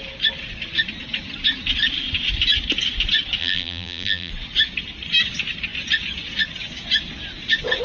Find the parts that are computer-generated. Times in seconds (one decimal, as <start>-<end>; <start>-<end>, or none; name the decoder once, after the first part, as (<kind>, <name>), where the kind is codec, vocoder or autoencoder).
3.4-4.3 (vocoder, BigVGAN v2)